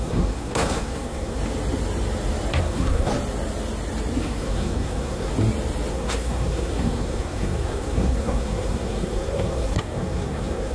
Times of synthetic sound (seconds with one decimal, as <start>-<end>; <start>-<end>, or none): 0.0-1.4; 2.6-3.1; 4.2-5.3; 5.9-10.7